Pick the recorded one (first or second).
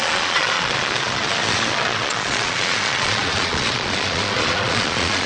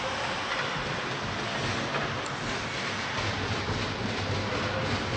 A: second